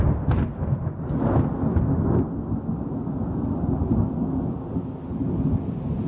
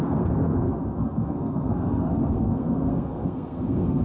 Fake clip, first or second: second